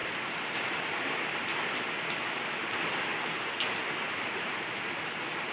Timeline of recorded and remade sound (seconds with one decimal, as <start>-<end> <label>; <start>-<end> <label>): 0.0-5.5 recorded